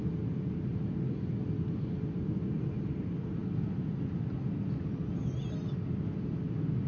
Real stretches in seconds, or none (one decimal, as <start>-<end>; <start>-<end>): 0.0-6.9

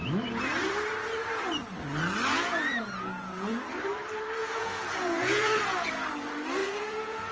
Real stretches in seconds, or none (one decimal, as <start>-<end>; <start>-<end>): 0.0-2.3; 3.5-4.4; 5.9-6.6